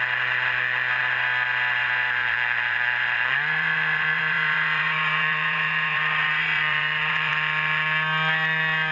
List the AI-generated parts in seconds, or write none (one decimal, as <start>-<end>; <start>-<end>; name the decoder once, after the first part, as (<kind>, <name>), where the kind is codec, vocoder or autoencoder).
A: 2.2-7.3 (vocoder, Vocos)